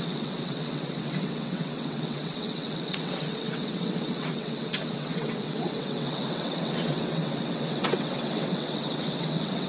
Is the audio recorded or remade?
remade